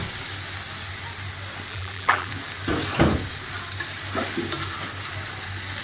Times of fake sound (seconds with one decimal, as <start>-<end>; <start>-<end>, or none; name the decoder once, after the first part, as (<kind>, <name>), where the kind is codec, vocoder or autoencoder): 1.7-2.3 (vocoder, BigVGAN v2)